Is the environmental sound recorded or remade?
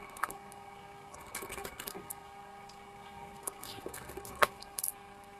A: remade